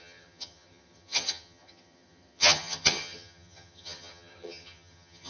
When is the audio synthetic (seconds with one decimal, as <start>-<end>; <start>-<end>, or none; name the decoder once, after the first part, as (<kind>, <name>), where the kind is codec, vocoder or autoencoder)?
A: 0.0-5.3 (vocoder, HiFi-GAN)